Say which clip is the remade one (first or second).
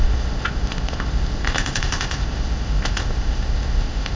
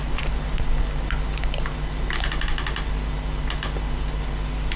first